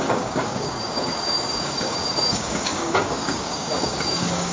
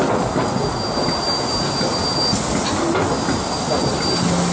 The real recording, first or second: second